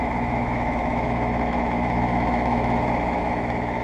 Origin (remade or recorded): remade